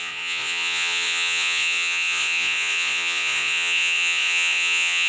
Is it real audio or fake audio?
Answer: fake